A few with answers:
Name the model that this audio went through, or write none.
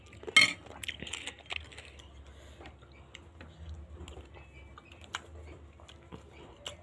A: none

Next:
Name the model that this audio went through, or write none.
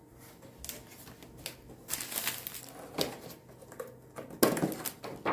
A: none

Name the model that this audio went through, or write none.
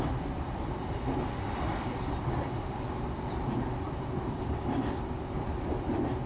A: vocoder, BigVGAN v2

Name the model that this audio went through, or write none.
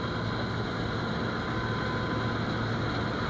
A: none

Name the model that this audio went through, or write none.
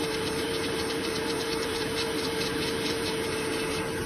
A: vocoder, BigVGAN v2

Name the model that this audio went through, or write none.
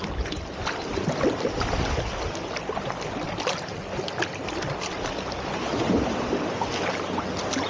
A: none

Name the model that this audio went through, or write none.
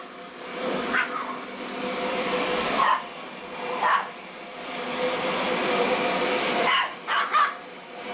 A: vocoder, BigVGAN v2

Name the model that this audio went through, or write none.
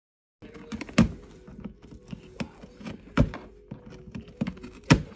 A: none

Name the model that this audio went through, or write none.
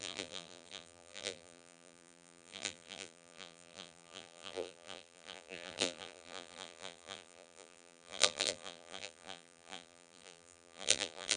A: vocoder, BigVGAN v2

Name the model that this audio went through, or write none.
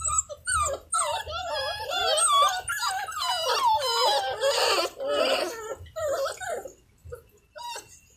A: none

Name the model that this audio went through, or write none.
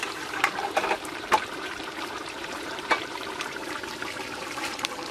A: vocoder, BigVGAN v2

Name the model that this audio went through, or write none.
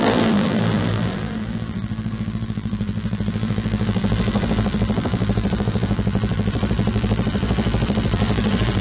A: vocoder, BigVGAN v2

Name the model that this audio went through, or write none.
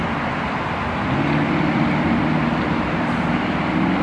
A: none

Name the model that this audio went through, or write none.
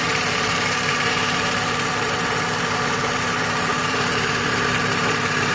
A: vocoder, BigVGAN v2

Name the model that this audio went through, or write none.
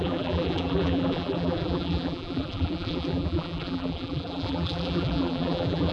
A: vocoder, BigVGAN v2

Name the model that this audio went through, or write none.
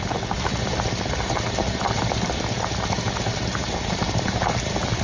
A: vocoder, BigVGAN v2